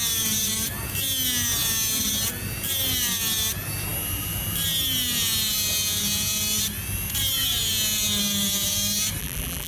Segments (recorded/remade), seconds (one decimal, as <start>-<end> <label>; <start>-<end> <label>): 0.0-9.2 recorded; 9.2-9.7 remade

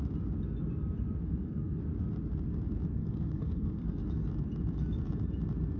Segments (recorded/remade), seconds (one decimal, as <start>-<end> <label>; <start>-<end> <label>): 0.0-1.2 recorded; 1.2-1.8 remade; 1.8-3.0 recorded; 3.0-4.0 remade; 4.0-5.8 recorded

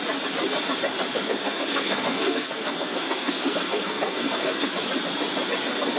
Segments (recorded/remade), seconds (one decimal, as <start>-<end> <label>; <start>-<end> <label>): 0.0-1.1 recorded; 1.1-4.7 remade; 4.7-6.0 recorded

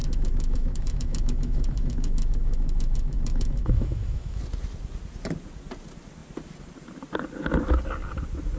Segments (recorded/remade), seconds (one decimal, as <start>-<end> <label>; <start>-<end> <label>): 0.0-4.4 remade; 4.4-8.6 recorded

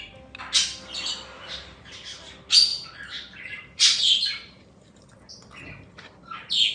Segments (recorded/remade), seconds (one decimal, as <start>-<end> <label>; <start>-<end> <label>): 0.0-2.7 recorded; 2.7-4.7 remade; 4.7-6.7 recorded

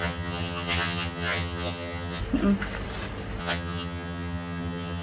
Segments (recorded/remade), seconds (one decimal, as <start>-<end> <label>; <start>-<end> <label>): 0.0-2.2 remade; 2.2-3.4 recorded; 3.4-5.0 remade